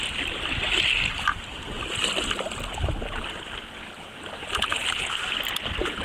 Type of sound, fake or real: real